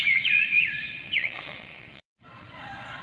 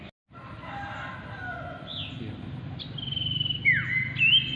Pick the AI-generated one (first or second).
first